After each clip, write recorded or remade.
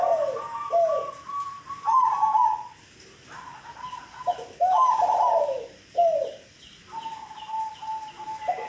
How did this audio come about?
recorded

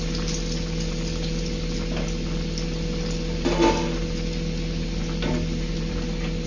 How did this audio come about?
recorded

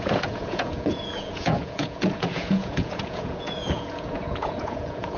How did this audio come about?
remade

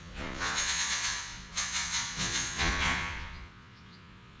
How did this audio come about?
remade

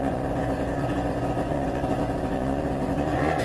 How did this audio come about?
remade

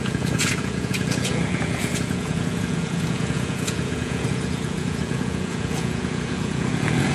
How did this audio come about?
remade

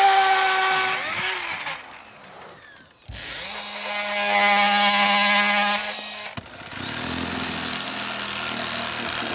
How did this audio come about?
recorded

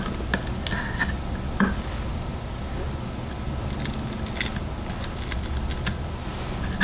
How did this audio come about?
recorded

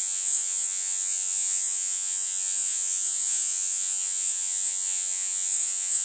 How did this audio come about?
remade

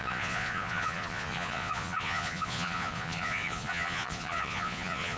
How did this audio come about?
remade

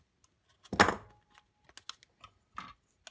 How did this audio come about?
recorded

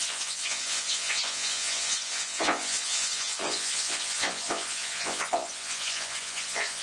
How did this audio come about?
remade